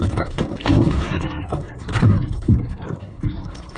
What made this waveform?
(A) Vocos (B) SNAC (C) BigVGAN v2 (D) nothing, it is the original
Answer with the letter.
B